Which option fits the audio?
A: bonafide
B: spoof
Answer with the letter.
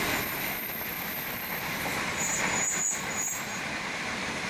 A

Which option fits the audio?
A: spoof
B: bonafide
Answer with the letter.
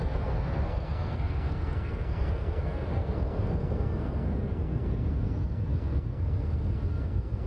A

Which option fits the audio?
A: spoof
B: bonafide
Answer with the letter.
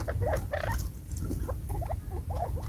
B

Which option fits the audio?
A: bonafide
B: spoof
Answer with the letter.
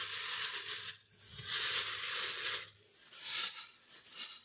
A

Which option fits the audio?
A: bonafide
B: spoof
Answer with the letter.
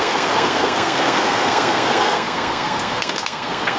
B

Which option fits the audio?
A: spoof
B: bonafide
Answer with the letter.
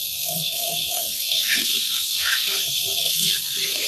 A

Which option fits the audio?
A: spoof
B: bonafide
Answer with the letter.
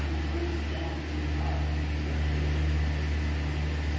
B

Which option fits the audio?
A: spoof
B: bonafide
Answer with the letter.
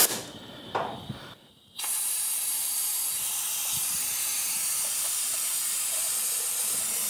B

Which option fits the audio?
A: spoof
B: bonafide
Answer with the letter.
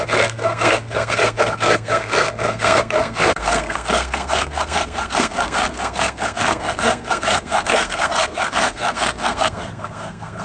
A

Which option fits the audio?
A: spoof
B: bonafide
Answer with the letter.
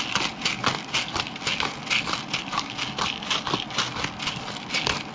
B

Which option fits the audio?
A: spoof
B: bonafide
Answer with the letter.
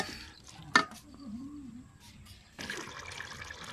B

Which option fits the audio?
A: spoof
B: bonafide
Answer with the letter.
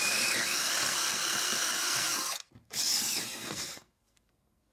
A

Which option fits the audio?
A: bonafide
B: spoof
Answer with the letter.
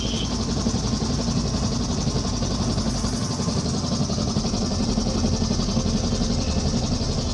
A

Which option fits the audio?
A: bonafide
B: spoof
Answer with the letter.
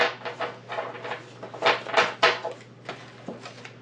A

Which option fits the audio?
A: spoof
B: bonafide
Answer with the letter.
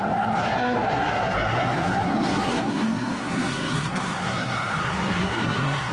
A